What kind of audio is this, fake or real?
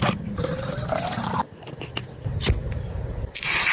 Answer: real